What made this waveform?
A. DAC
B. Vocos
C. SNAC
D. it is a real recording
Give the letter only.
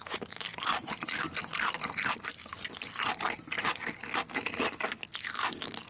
D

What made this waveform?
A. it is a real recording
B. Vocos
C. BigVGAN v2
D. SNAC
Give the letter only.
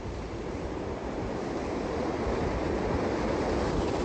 A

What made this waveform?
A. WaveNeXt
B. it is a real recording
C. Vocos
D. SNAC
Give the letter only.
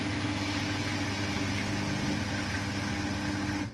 B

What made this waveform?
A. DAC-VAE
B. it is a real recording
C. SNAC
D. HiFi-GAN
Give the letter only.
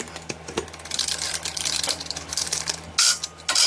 B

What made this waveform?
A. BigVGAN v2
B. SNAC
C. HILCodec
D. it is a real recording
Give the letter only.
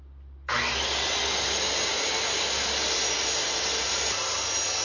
D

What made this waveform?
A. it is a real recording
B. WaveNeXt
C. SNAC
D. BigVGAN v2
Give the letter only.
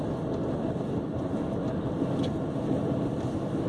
A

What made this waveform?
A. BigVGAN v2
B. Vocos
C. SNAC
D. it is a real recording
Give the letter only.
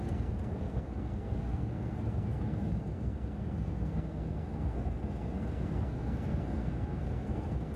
C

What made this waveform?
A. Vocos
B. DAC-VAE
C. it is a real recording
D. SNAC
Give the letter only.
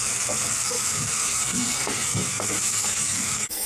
D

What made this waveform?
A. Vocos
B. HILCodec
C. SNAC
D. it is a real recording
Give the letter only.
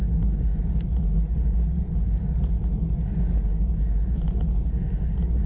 D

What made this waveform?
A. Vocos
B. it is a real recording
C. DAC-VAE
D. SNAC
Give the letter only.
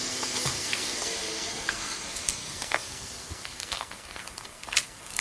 D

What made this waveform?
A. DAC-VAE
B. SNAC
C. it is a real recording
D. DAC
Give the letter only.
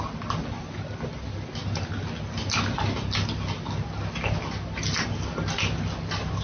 C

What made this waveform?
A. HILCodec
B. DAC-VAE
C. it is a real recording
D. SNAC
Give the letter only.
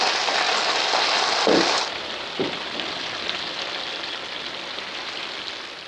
C